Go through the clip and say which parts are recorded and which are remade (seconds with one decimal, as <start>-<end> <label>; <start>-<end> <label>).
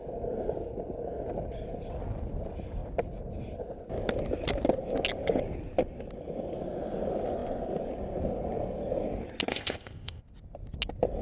0.0-9.5 recorded; 9.5-10.2 remade; 10.2-11.2 recorded